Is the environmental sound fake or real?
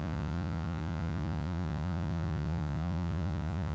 fake